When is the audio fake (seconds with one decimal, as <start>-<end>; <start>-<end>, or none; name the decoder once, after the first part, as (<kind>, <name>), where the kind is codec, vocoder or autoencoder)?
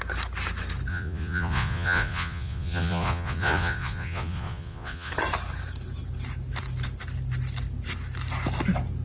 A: 0.9-5.1 (vocoder, Vocos)